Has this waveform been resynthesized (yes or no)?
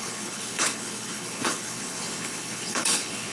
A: yes